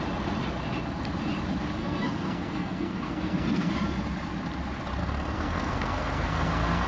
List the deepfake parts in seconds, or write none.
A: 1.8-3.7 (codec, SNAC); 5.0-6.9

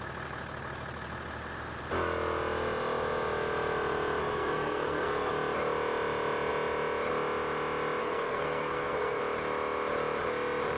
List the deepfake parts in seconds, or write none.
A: 4.2-5.3 (codec, SNAC); 8.0-9.2

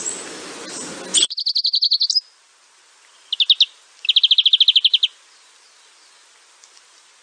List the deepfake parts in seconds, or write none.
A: none

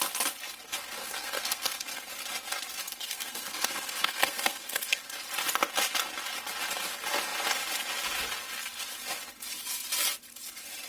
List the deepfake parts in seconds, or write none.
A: 1.0-2.0 (codec, SNAC); 2.8-5.0

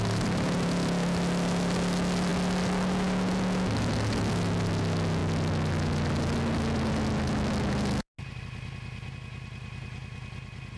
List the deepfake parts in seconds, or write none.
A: none

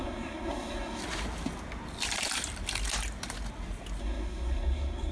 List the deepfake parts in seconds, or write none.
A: 0.0-1.0 (codec, SNAC); 4.0-5.1

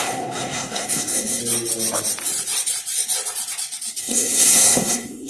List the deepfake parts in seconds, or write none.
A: 0.0-1.4 (codec, SNAC); 4.0-5.3